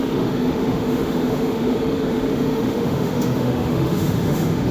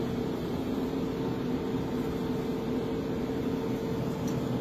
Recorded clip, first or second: second